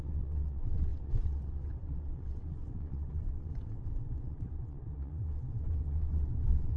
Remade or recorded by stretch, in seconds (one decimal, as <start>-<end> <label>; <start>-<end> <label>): 0.0-6.8 remade